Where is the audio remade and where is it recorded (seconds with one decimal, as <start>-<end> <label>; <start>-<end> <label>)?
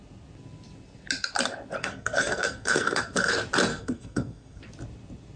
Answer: 0.0-1.8 recorded; 1.8-3.3 remade; 3.3-3.7 recorded; 3.7-4.6 remade; 4.6-5.4 recorded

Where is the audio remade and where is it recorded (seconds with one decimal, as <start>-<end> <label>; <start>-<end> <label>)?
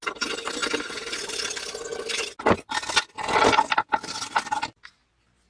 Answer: 0.0-5.5 recorded